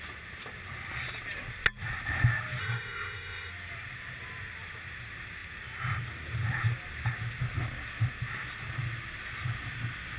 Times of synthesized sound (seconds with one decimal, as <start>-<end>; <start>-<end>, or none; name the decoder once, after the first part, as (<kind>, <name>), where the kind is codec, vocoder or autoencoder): 2.6-3.5 (autoencoder, DAC-VAE)